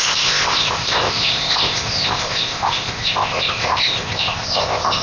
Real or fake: fake